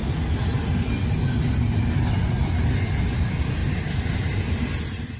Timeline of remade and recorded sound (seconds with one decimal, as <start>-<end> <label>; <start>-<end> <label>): 0.0-3.6 recorded; 3.6-4.7 remade; 4.7-5.2 recorded